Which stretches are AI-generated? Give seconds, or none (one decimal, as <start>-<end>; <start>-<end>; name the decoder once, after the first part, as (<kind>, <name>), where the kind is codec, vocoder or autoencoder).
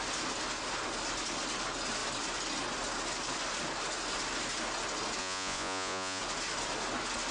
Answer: 5.2-6.2 (vocoder, Vocos)